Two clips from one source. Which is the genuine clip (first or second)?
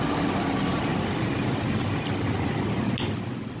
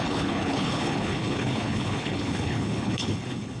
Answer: first